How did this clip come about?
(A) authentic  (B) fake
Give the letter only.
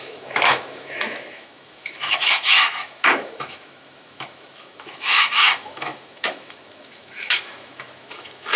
B